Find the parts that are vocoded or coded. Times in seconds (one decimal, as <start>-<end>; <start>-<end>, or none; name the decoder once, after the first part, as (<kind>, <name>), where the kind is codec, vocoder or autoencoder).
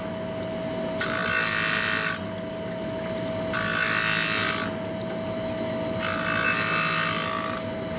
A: none